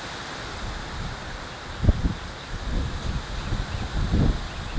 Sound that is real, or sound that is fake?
real